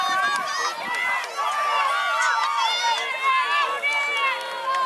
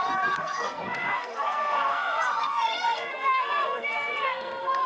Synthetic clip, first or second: second